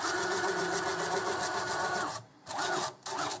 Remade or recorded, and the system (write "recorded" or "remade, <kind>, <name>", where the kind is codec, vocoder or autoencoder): recorded